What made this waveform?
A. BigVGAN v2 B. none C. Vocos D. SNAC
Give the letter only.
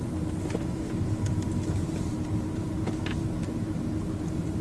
A